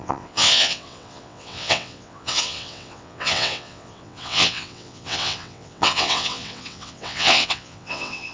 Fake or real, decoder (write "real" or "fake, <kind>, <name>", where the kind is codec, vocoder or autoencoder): fake, vocoder, WaveNeXt